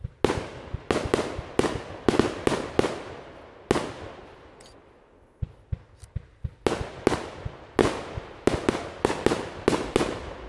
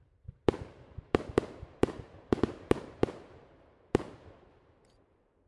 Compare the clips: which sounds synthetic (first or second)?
second